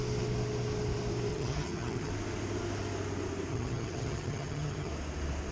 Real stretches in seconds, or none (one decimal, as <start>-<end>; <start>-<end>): 0.0-1.3; 2.1-3.5; 4.9-5.5